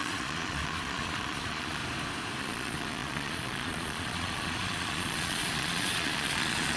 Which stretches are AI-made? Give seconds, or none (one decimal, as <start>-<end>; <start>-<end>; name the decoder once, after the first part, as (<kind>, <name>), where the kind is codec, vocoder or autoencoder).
0.0-1.8 (vocoder, Vocos); 2.4-6.8